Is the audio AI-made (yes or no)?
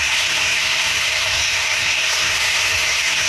yes